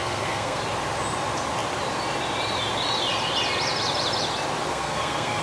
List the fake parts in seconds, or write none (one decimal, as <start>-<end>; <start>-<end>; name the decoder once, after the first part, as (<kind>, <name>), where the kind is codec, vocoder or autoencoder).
0.0-0.6 (codec, SNAC); 4.7-5.4